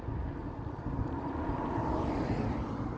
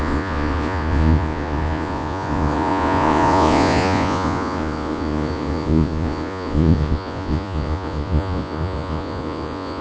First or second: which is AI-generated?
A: second